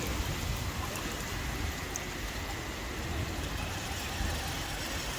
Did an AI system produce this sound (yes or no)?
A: no